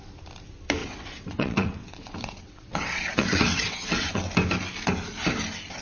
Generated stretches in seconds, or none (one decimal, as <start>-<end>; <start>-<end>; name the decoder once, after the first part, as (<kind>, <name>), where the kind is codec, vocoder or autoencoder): 0.8-4.3 (vocoder, WaveNeXt)